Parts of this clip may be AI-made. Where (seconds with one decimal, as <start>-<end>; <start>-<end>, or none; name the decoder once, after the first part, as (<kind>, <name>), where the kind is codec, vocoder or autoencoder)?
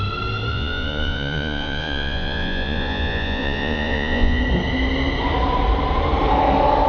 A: 0.5-4.4 (vocoder, Vocos)